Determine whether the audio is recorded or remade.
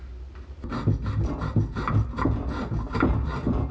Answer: recorded